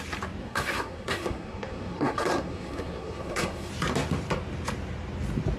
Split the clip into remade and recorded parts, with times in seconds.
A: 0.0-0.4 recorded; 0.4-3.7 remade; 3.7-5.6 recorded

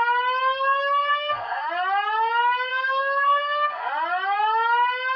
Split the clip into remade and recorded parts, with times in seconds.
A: 0.0-1.0 recorded; 1.0-1.7 remade; 1.7-2.7 recorded; 2.7-3.9 remade; 3.9-5.2 recorded

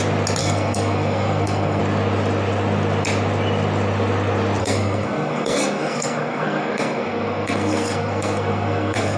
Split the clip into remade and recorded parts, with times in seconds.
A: 0.0-0.4 recorded; 0.4-1.8 remade; 1.8-4.6 recorded; 4.6-9.2 remade

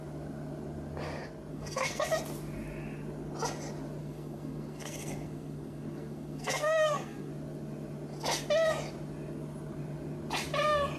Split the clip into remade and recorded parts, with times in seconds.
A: 0.0-1.5 recorded; 1.5-2.1 remade; 2.1-4.0 recorded; 4.0-7.3 remade; 7.3-11.0 recorded

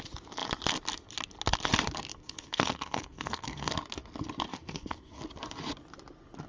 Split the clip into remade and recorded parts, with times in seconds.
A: 0.0-2.1 recorded; 2.1-3.7 remade; 3.7-4.5 recorded; 4.5-5.2 remade; 5.2-6.5 recorded

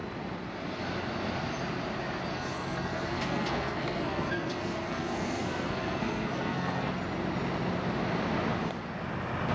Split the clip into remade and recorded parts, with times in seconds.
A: 0.0-2.3 recorded; 2.3-6.9 remade; 6.9-9.5 recorded